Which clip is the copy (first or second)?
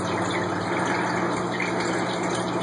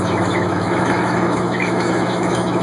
second